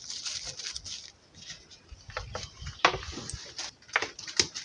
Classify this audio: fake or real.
real